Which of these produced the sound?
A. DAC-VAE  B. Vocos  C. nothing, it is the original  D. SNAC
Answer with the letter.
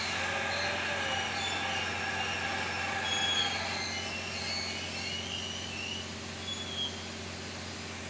C